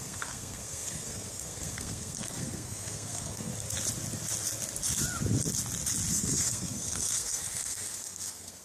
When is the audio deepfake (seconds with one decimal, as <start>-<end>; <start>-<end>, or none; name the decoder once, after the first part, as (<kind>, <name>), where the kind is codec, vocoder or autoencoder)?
0.0-3.5 (codec, SNAC); 6.1-8.6